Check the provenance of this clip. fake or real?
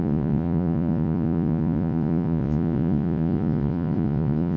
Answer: fake